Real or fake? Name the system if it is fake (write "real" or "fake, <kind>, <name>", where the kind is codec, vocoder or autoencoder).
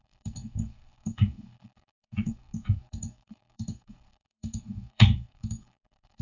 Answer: fake, codec, SNAC